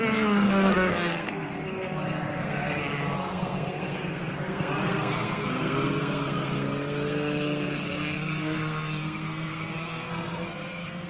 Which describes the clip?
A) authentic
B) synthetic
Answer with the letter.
B